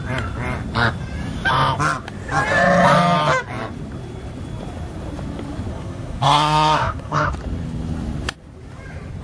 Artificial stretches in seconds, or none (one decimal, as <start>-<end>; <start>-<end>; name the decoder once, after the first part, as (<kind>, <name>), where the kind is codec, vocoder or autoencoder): 5.7-7.3 (codec, SNAC)